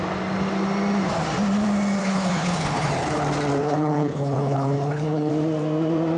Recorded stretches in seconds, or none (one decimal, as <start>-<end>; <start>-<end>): 0.0-2.0; 2.9-3.6; 5.3-6.2